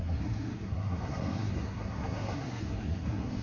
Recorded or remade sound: remade